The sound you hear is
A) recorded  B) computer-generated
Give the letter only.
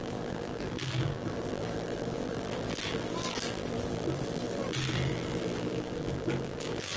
B